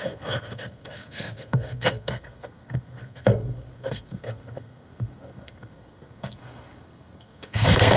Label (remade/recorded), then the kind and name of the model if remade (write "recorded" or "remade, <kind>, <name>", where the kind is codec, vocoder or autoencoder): remade, codec, SNAC